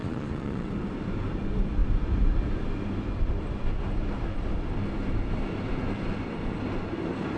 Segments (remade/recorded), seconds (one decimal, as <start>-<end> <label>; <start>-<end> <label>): 0.0-0.7 remade; 0.7-7.4 recorded